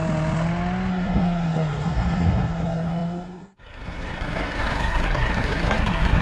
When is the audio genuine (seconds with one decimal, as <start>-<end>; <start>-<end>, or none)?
0.0-0.9